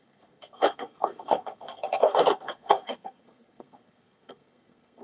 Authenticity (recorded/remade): remade